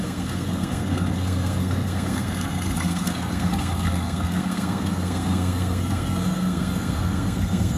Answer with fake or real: fake